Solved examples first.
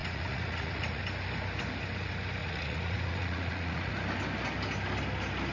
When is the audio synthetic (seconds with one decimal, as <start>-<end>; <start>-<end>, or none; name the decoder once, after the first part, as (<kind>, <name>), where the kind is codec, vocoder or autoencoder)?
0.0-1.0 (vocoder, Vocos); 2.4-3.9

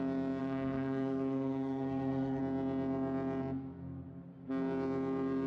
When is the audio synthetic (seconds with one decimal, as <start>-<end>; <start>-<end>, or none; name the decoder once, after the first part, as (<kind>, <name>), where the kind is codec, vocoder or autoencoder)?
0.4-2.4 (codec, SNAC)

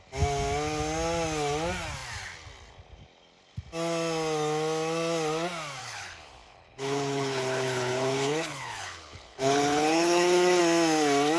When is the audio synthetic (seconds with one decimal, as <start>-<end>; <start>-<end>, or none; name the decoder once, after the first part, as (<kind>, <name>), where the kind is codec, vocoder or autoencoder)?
5.8-10.6 (codec, HILCodec)

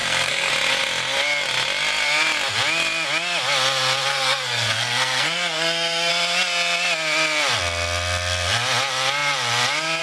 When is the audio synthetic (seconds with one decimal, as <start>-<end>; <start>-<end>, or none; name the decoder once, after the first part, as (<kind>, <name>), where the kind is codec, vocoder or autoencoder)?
0.0-0.5 (codec, SNAC); 4.1-6.1

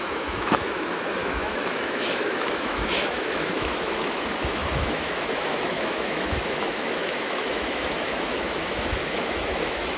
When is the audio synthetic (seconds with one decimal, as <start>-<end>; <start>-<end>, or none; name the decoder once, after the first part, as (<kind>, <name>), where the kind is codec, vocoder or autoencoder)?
0.0-10.0 (autoencoder, DAC-VAE)